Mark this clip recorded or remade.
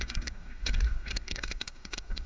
remade